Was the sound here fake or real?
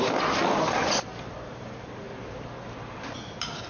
real